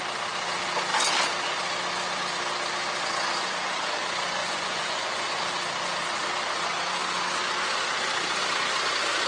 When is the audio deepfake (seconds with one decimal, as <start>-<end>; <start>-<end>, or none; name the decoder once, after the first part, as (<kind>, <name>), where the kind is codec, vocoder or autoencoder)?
4.4-5.4 (vocoder, Vocos)